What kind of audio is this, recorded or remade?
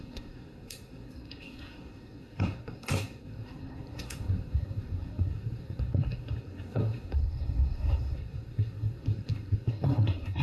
remade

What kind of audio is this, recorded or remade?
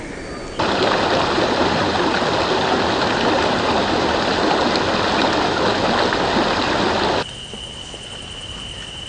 recorded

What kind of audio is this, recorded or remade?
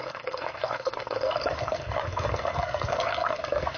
remade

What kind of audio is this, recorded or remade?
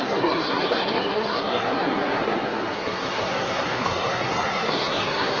remade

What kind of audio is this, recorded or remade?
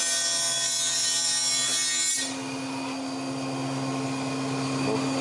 recorded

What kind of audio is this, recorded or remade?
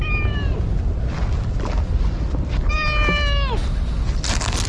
recorded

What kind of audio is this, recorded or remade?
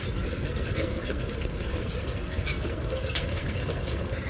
remade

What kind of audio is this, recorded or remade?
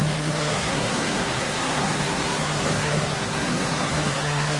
remade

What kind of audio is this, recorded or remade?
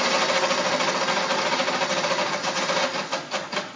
recorded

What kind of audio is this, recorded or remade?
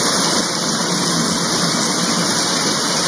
recorded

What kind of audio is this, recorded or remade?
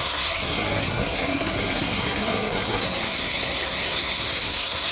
remade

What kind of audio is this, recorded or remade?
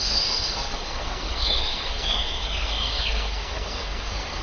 remade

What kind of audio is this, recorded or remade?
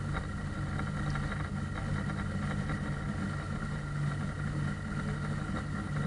recorded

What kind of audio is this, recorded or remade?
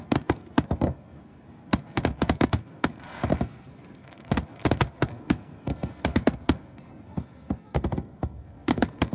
remade